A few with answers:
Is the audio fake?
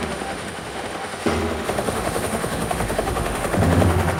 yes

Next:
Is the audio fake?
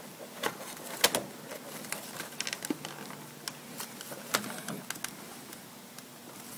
no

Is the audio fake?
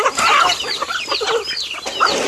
no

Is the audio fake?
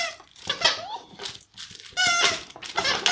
no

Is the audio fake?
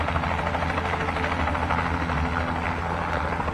no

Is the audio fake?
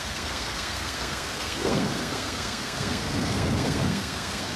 yes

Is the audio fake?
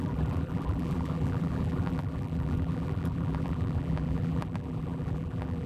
yes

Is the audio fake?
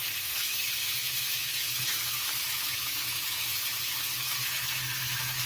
yes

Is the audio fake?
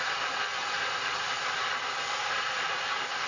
no